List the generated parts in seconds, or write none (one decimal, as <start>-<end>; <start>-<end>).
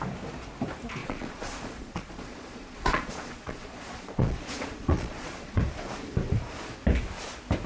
1.0-5.6